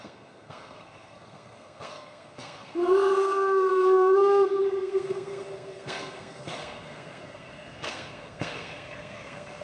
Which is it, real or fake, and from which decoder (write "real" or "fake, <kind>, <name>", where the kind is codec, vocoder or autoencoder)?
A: fake, codec, SNAC